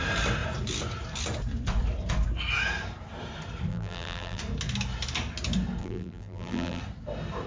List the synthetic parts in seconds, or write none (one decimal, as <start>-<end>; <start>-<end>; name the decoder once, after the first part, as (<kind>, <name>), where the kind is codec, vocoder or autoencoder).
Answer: 3.7-4.4 (vocoder, BigVGAN v2); 5.8-6.8

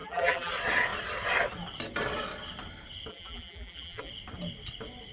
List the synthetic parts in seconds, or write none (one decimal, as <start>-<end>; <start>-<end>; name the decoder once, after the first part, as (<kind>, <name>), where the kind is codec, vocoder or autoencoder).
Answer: 0.0-0.5 (vocoder, BigVGAN v2); 3.1-4.1

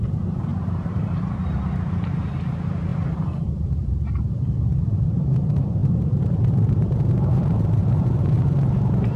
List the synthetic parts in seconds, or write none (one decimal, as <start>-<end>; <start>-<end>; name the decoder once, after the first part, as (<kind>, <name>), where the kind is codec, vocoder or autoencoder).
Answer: 0.0-9.2 (vocoder, BigVGAN v2)